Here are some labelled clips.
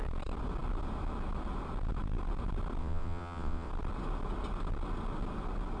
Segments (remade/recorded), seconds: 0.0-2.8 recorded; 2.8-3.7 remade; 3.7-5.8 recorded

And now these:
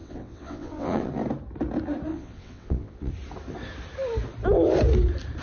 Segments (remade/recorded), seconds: 0.0-1.1 remade; 1.1-2.1 recorded; 2.1-3.1 remade; 3.1-5.4 recorded

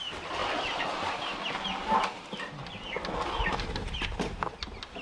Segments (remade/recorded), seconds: 0.0-5.0 recorded

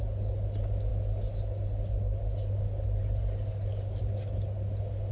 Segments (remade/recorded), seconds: 0.0-5.1 recorded

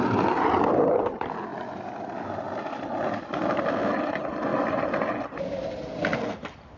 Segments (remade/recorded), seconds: 0.0-6.8 recorded

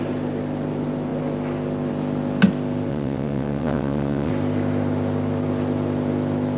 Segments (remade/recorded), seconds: 0.0-2.9 recorded; 2.9-4.3 remade; 4.3-6.6 recorded